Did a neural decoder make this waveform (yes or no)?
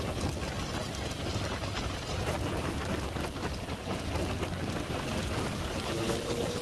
no